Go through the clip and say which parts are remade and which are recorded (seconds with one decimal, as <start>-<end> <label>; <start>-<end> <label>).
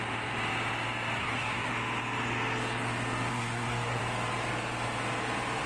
0.0-1.2 recorded; 1.2-1.7 remade; 1.7-3.3 recorded; 3.3-4.0 remade; 4.0-5.7 recorded